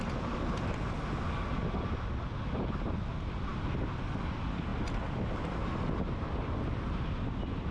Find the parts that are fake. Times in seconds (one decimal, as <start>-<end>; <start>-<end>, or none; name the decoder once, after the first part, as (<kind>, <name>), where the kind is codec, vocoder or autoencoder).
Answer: none